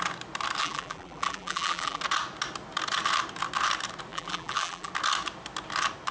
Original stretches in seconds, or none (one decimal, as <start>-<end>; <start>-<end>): 0.0-0.6; 2.0-4.1; 4.9-6.1